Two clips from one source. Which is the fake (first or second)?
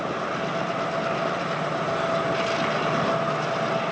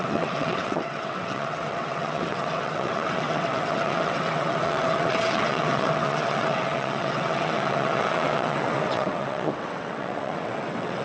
second